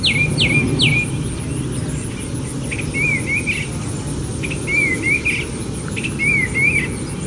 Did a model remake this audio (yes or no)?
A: no